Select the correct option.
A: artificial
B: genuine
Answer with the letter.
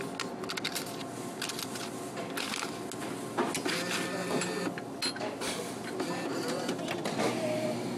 B